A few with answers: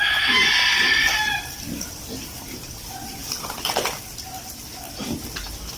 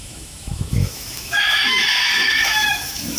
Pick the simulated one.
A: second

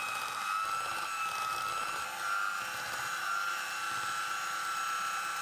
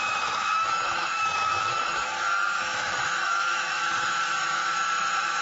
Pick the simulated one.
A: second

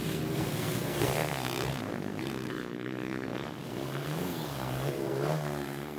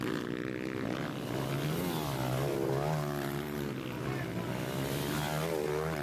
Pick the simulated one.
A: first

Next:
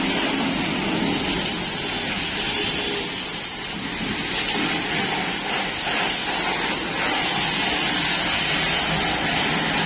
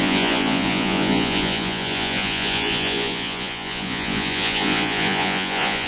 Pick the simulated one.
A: second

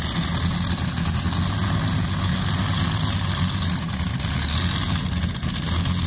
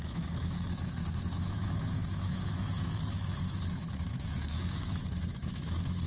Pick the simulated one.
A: second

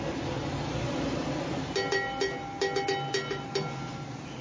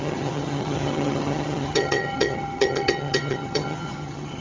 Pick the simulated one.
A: second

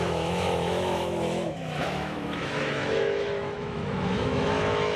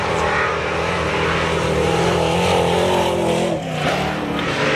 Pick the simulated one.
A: first